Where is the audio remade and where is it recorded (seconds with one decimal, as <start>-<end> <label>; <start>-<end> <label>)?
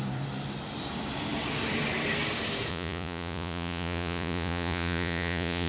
0.0-2.7 recorded; 2.7-5.7 remade